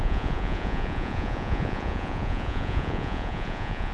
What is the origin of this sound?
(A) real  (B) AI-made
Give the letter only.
B